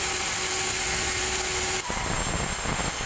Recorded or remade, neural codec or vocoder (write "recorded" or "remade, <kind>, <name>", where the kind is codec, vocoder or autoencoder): recorded